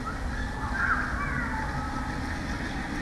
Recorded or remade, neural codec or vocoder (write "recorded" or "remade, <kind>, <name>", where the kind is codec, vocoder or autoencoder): recorded